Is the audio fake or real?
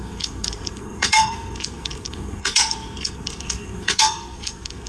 fake